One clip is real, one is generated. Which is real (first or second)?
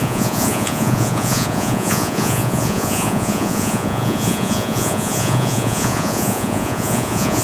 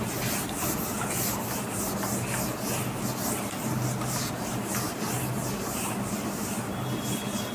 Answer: second